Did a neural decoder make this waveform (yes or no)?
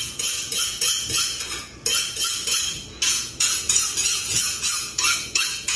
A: yes